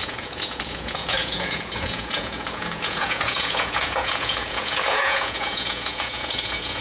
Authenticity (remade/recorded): remade